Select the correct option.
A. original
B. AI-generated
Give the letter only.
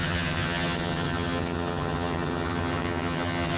B